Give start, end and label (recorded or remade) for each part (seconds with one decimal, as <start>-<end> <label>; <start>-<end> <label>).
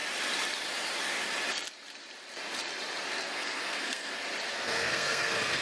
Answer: 0.0-3.2 recorded; 3.2-4.1 remade; 4.1-4.5 recorded; 4.5-5.6 remade